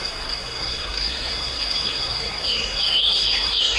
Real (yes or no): no